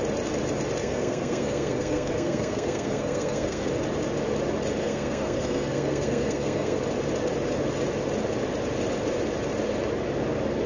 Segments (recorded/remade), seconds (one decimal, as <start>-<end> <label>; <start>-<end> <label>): 0.0-0.8 recorded; 0.8-3.7 remade; 3.7-4.8 recorded; 4.8-6.8 remade; 6.8-10.7 recorded